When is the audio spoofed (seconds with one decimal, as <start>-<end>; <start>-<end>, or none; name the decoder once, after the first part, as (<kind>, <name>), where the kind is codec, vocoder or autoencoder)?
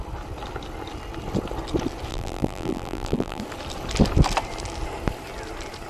2.1-3.4 (vocoder, BigVGAN v2)